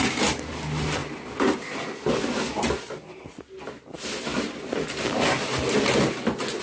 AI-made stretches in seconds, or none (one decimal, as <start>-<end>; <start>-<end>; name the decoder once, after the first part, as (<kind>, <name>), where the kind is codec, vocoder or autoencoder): none